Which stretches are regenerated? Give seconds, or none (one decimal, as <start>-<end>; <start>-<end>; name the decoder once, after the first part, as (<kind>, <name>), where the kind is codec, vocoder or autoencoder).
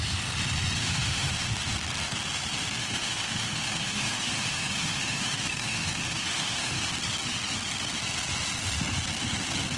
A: 0.8-1.3 (autoencoder, DAC-VAE); 2.8-6.9